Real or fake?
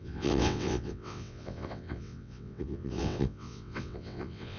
fake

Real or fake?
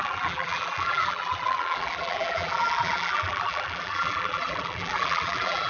fake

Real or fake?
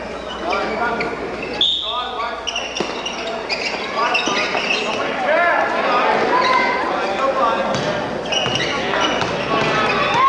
real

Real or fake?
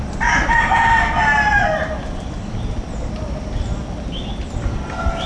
real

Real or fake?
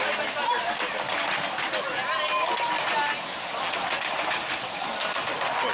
real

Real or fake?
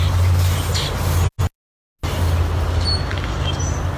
real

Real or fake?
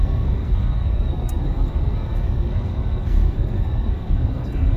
fake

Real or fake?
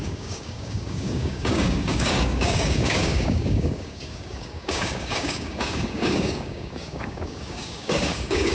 fake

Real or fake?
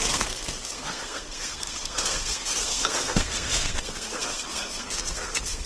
fake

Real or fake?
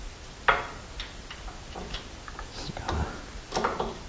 real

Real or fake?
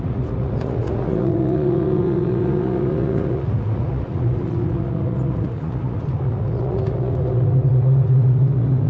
fake